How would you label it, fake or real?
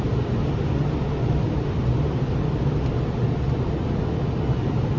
real